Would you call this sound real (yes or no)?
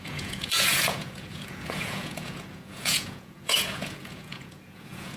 no